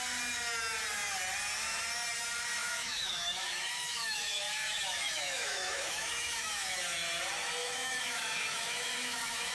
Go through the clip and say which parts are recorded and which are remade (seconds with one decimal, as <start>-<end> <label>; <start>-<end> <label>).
0.0-2.6 recorded; 2.6-6.8 remade; 6.8-7.6 recorded; 7.6-9.5 remade